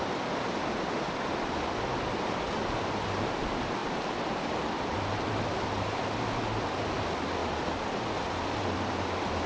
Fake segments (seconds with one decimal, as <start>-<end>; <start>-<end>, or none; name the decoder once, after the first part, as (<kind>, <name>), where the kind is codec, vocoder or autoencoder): none